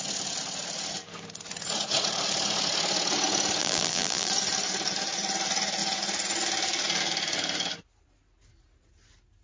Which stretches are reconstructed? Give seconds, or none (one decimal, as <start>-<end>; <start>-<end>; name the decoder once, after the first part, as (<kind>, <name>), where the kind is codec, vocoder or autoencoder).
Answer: 3.6-4.3 (vocoder, BigVGAN v2)